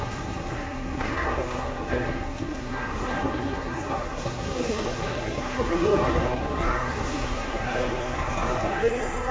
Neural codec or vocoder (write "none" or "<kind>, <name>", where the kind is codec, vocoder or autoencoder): codec, SNAC